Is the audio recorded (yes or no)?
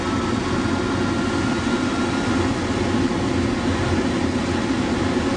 yes